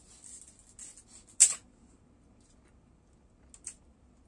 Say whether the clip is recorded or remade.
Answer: recorded